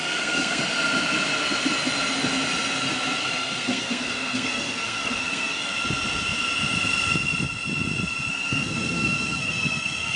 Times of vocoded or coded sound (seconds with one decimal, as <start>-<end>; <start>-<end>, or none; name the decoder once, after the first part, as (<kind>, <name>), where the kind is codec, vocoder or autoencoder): 0.0-0.6 (codec, SNAC); 3.2-5.7; 8.3-10.2

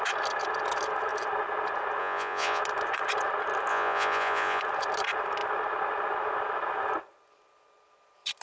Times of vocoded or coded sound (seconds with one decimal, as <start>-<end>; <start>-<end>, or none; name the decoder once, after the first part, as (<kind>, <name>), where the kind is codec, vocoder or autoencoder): 2.0-2.6 (vocoder, Vocos); 3.7-4.6

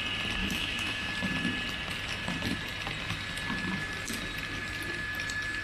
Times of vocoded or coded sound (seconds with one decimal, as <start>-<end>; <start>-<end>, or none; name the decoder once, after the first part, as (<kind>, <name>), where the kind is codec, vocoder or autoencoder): 0.4-1.1 (autoencoder, DAC-VAE)

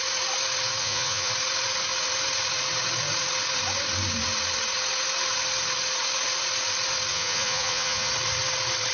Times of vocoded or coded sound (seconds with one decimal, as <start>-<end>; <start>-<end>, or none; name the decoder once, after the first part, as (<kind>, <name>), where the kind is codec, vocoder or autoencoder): 0.8-1.3 (vocoder, Vocos); 7.1-8.1

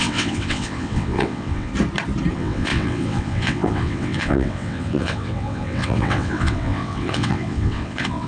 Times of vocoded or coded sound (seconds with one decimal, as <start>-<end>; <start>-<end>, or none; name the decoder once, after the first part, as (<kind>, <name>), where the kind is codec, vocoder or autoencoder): 0.0-1.7 (vocoder, WaveNeXt); 2.3-8.3